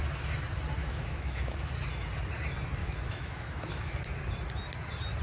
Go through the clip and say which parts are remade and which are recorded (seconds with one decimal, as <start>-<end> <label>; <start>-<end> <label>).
0.0-0.8 recorded; 0.8-1.7 remade; 1.7-2.8 recorded; 2.8-3.9 remade; 3.9-5.2 recorded